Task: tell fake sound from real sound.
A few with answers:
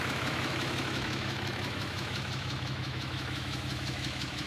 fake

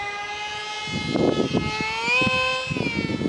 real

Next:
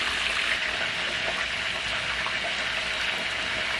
real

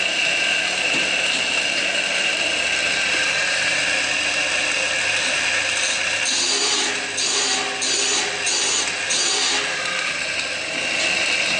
real